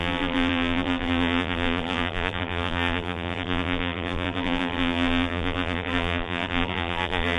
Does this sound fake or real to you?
fake